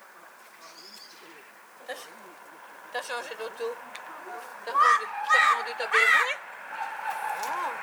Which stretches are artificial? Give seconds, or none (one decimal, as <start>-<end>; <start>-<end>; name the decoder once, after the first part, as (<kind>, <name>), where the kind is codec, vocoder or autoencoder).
1.0-2.0 (vocoder, BigVGAN v2); 4.5-6.5